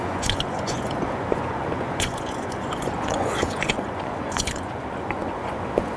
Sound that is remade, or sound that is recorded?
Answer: remade